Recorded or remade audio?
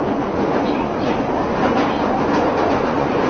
remade